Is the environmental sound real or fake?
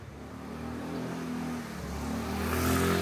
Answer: real